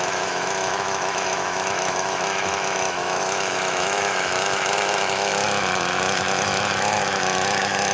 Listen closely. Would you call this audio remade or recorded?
remade